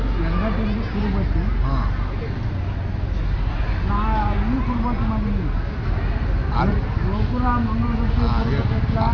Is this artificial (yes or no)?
no